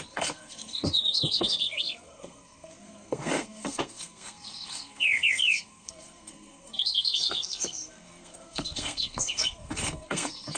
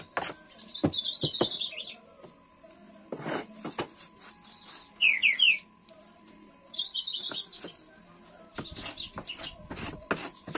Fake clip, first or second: first